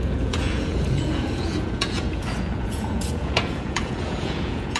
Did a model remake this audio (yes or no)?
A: yes